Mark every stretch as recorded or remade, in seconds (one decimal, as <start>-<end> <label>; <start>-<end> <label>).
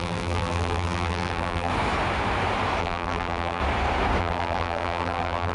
0.0-1.7 remade; 1.7-2.8 recorded; 2.8-3.6 remade; 3.6-4.2 recorded; 4.2-5.5 remade